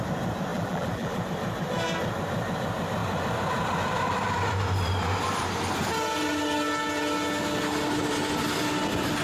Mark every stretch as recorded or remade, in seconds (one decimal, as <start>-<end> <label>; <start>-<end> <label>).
0.0-0.5 recorded; 0.5-1.2 remade; 1.2-9.2 recorded